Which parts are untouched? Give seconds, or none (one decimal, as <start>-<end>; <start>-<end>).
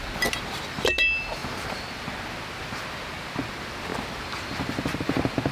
0.0-5.5